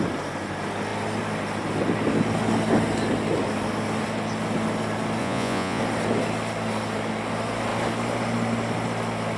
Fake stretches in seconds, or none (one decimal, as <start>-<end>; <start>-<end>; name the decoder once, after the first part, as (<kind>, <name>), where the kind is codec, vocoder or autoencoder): 5.2-5.8 (vocoder, Vocos)